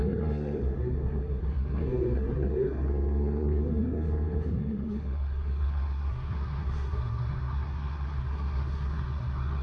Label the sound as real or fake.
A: fake